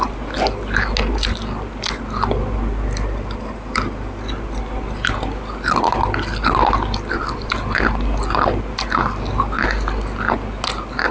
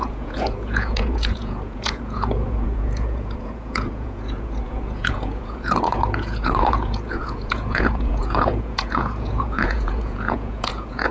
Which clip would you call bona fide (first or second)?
first